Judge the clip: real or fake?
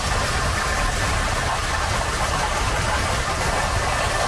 real